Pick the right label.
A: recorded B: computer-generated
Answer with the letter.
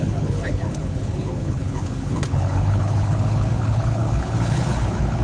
B